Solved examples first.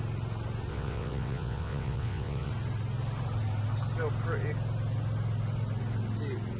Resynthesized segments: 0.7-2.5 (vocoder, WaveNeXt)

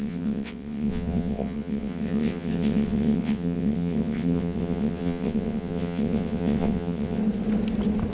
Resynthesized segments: 0.0-7.2 (vocoder, WaveNeXt)

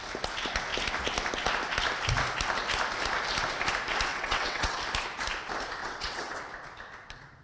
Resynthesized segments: 4.1-4.8 (vocoder, WaveNeXt); 5.8-6.4

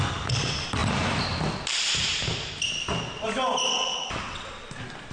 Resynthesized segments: 3.7-4.5 (vocoder, WaveNeXt)